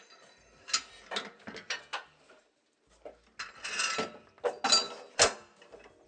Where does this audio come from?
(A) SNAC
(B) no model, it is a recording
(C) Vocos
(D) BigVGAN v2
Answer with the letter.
B